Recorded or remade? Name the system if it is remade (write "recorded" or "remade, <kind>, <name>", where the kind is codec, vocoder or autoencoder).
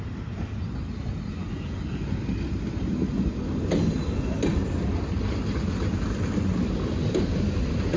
recorded